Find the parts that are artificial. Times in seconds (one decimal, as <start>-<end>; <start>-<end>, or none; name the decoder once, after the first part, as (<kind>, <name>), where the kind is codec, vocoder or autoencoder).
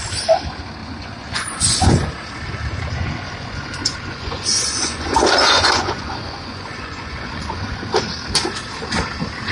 0.8-2.1 (vocoder, Vocos); 3.0-7.9